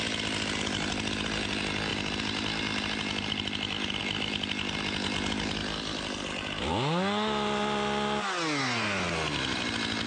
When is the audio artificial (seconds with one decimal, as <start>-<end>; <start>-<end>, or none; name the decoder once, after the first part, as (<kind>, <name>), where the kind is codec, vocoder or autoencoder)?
none